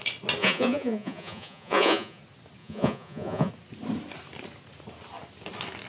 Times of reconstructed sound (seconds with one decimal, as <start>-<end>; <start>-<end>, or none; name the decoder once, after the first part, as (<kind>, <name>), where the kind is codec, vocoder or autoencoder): 0.4-2.2 (vocoder, Vocos); 2.6-3.5